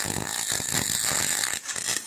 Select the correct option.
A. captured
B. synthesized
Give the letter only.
A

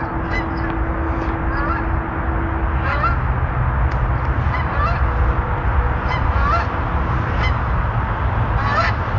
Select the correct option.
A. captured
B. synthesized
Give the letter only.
A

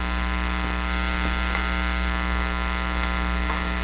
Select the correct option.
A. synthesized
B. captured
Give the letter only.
A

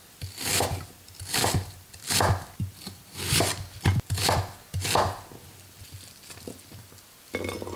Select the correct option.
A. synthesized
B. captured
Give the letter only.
B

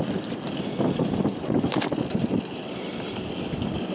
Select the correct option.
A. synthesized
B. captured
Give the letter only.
B